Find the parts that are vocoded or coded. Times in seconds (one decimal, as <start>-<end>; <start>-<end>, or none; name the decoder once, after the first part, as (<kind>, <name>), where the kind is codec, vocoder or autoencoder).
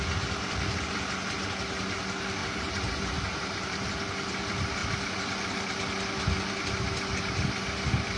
2.4-3.9 (vocoder, BigVGAN v2)